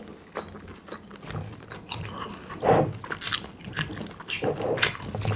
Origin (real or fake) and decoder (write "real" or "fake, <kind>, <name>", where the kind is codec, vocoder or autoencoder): real